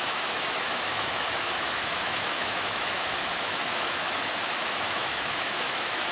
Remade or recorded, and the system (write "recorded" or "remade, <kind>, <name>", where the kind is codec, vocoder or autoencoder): remade, autoencoder, DAC-VAE